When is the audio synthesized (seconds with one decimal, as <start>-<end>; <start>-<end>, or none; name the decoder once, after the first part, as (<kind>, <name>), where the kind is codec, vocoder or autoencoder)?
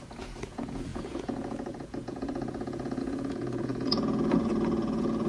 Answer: 0.0-5.3 (vocoder, Vocos)